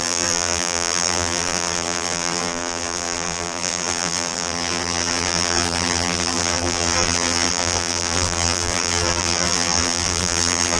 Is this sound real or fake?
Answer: fake